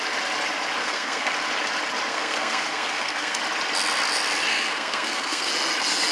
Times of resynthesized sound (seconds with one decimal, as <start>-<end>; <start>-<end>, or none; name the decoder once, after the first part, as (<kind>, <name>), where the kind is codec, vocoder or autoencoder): 0.8-1.3 (codec, SNAC); 2.1-3.4; 4.5-5.5